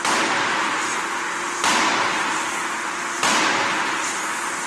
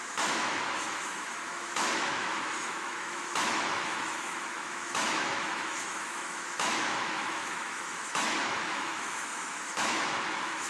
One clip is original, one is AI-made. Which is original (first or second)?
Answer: first